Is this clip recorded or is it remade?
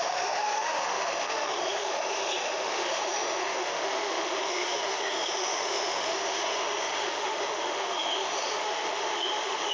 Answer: remade